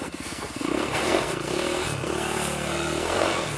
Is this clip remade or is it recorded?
remade